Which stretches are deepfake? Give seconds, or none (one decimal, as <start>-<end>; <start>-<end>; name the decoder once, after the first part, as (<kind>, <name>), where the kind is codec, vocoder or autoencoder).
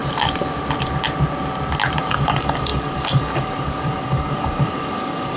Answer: 2.0-5.4 (codec, DAC)